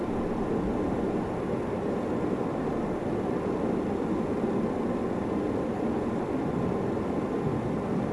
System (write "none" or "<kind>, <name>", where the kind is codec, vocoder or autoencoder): none